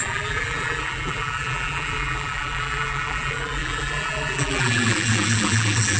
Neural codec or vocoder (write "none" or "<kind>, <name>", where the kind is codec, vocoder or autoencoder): vocoder, BigVGAN v2